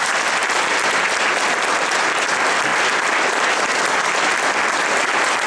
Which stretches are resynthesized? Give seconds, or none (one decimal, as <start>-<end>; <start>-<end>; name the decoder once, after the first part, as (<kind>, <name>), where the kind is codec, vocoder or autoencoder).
2.7-3.6 (vocoder, BigVGAN v2)